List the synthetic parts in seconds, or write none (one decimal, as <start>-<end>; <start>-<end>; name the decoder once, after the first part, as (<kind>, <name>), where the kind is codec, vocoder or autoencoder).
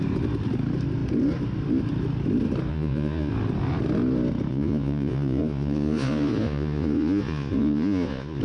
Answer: 2.7-3.3 (vocoder, Vocos); 4.5-8.4